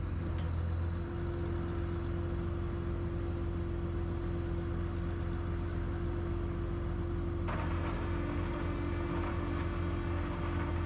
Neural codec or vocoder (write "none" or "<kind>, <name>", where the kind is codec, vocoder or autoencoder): none